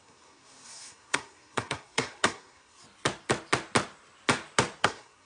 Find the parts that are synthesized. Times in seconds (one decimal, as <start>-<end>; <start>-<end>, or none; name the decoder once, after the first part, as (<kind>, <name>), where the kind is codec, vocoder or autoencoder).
0.0-2.8 (codec, SNAC); 4.8-5.3